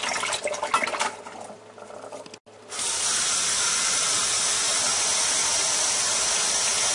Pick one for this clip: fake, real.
real